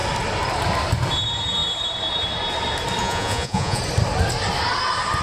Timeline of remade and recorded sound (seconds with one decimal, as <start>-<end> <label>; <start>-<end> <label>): 0.0-3.0 recorded; 3.0-3.8 remade; 3.8-5.2 recorded

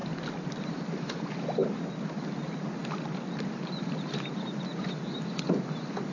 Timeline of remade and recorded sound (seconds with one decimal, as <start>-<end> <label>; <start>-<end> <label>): 0.0-6.1 recorded

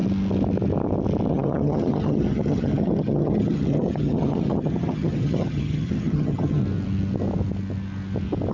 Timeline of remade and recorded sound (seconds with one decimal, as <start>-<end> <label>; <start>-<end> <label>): 0.0-1.3 recorded; 1.3-6.6 remade; 6.6-8.5 recorded